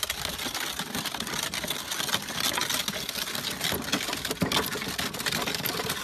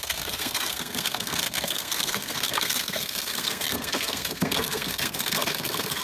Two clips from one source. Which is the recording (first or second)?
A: first